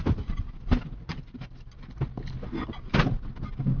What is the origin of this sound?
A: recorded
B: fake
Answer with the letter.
A